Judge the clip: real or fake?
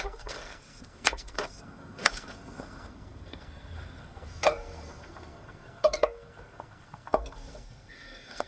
fake